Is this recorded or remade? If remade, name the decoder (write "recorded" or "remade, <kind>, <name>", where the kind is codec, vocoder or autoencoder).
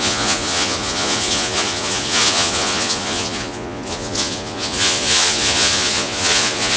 remade, vocoder, Vocos